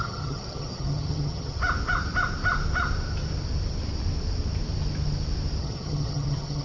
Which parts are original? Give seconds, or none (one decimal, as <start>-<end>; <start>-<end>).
1.6-5.6